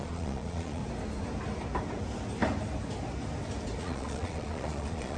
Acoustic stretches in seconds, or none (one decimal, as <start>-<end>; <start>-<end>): 0.8-3.8